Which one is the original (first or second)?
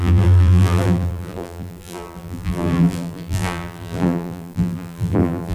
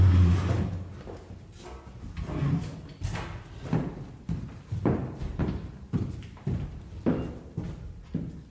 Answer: second